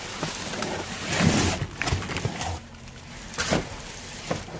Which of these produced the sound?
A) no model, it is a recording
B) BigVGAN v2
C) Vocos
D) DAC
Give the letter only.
A